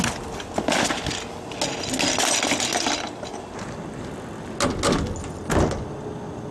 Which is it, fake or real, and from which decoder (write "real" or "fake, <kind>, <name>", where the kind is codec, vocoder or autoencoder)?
real